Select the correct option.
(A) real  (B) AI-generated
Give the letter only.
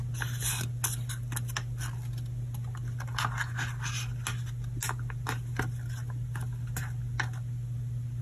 A